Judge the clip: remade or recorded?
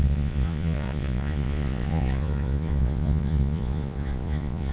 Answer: remade